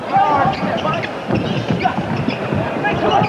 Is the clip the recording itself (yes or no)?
no